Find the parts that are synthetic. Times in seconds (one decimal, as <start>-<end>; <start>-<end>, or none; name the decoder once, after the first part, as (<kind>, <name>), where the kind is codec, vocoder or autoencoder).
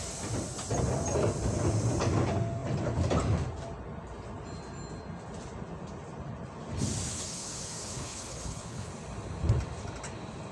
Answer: 7.1-8.9 (codec, HILCodec)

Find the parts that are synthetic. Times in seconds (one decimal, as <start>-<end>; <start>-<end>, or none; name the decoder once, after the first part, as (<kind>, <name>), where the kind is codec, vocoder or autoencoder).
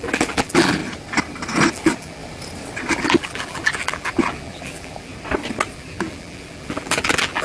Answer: 0.0-0.8 (vocoder, BigVGAN v2); 1.7-2.2; 2.9-5.1; 5.7-7.4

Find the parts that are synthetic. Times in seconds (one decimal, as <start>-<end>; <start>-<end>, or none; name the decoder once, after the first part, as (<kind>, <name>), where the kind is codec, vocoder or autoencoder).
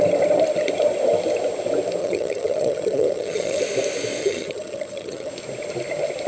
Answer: 2.0-3.6 (vocoder, HiFi-GAN); 4.2-5.3